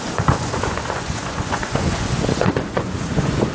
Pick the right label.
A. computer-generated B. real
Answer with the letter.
A